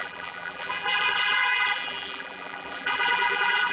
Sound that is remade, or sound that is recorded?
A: remade